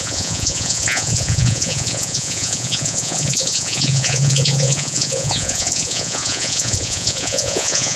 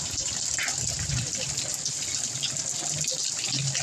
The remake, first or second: first